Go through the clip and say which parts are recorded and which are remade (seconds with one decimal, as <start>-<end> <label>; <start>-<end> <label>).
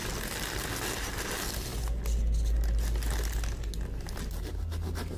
0.0-5.2 recorded